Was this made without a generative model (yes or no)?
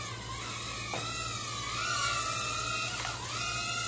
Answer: yes